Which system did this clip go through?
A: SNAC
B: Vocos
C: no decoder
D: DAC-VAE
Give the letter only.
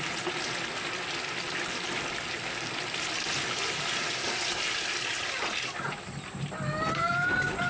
C